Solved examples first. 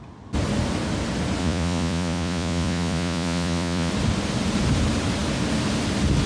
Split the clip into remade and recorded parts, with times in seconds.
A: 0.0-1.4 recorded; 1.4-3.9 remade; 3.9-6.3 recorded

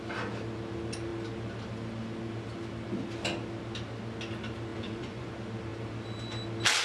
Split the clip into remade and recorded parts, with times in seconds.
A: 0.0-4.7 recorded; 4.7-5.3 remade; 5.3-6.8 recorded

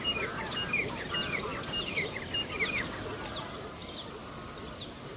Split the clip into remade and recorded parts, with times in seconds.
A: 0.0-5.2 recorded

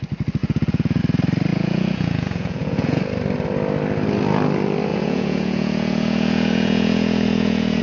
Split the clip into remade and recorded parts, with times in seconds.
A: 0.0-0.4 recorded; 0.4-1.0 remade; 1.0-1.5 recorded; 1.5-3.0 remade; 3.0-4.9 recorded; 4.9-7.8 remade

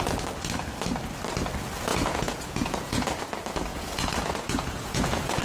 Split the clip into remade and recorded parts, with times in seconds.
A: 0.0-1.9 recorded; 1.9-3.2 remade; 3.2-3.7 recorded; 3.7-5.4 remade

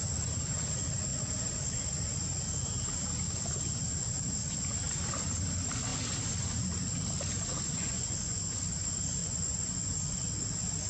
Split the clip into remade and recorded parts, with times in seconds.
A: 0.0-7.5 recorded; 7.5-8.5 remade; 8.5-9.2 recorded; 9.2-10.2 remade; 10.2-10.9 recorded

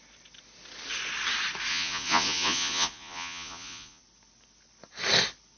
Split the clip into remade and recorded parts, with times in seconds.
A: 0.0-1.7 recorded; 1.7-4.0 remade; 4.0-5.6 recorded

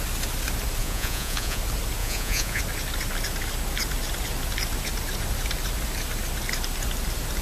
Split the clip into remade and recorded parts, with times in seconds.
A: 0.0-0.8 recorded; 0.8-1.6 remade; 1.6-2.0 recorded; 2.0-2.6 remade; 2.6-7.4 recorded